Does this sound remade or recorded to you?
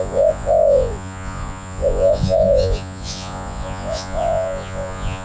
remade